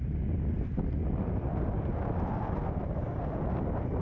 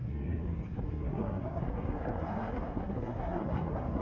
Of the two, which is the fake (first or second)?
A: second